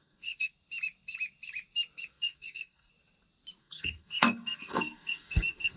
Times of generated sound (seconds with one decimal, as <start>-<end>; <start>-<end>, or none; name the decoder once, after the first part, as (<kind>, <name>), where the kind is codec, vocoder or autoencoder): 0.0-0.5 (codec, SNAC); 2.1-2.9; 3.6-5.8